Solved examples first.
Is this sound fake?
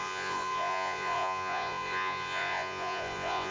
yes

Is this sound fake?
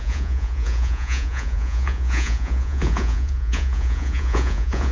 yes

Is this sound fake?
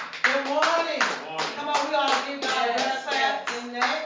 no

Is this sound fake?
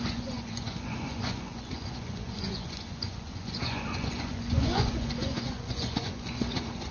yes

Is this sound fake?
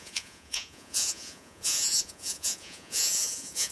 yes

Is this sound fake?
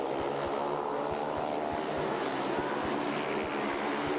no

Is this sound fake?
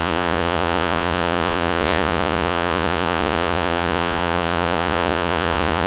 yes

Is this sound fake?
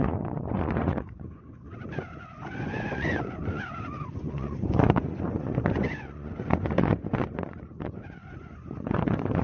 yes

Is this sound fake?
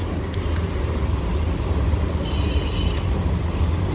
no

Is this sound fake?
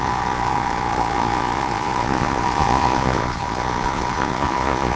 yes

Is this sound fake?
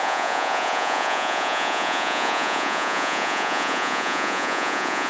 yes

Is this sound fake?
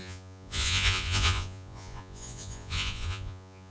yes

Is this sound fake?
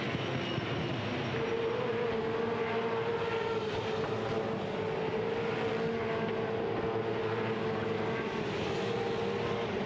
no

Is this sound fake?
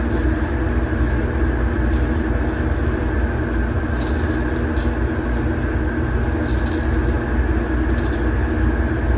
no